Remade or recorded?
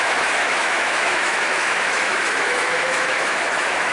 remade